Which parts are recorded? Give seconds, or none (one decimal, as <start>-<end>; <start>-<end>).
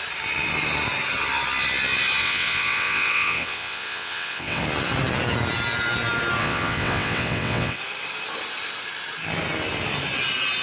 0.0-2.2; 4.6-6.4; 7.8-10.6